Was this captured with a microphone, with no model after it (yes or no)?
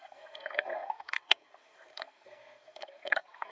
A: no